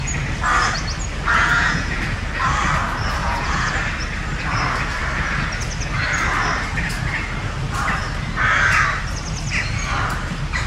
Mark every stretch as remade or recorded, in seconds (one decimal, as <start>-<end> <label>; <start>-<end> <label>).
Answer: 0.0-1.4 recorded; 1.4-2.0 remade; 2.0-3.2 recorded; 3.2-3.7 remade; 3.7-10.7 recorded